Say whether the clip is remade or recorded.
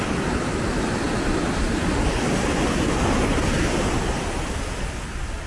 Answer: recorded